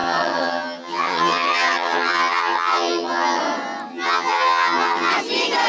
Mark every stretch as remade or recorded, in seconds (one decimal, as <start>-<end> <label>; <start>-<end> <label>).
0.0-3.4 remade; 3.4-3.9 recorded; 3.9-5.1 remade; 5.1-5.7 recorded